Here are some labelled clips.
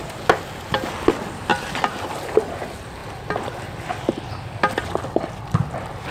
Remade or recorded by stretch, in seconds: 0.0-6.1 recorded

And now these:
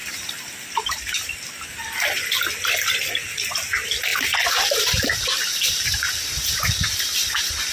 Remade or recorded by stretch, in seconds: 0.0-7.7 recorded

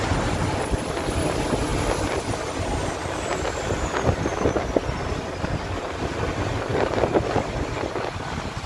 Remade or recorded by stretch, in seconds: 0.0-6.7 recorded; 6.7-7.5 remade; 7.5-8.7 recorded

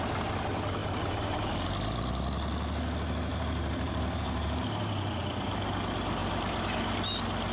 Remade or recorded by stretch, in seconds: 0.0-0.8 recorded; 0.8-1.7 remade; 1.7-3.3 recorded; 3.3-5.2 remade; 5.2-6.2 recorded; 6.2-6.7 remade; 6.7-7.5 recorded

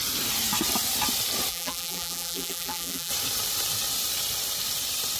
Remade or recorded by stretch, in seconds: 0.0-1.5 recorded; 1.5-3.1 remade; 3.1-5.2 recorded

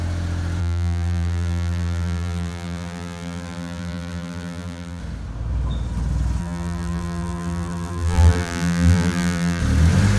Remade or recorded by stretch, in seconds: 0.0-0.6 recorded; 0.6-5.0 remade; 5.0-6.4 recorded; 6.4-9.6 remade; 9.6-10.2 recorded

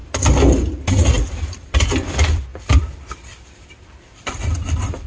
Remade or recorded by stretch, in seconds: 0.0-2.5 recorded; 2.5-4.3 remade; 4.3-5.1 recorded